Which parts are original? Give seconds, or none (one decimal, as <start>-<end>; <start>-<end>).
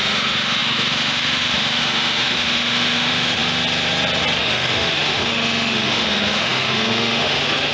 3.4-4.4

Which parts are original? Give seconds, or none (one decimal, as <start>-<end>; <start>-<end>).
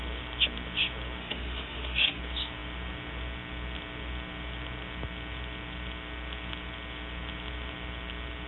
0.0-1.2; 2.2-8.5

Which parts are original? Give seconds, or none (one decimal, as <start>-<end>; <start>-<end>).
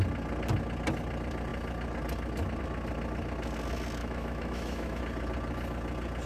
0.0-4.0; 5.0-6.3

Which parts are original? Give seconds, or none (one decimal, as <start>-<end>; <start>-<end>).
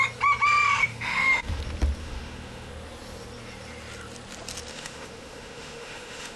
0.0-0.8; 1.6-2.0; 2.7-4.7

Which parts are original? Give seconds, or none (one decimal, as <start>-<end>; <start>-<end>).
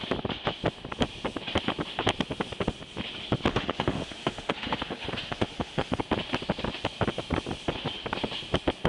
0.0-3.5; 6.0-8.9